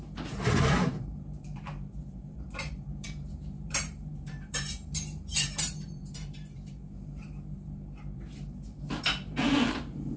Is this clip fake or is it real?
fake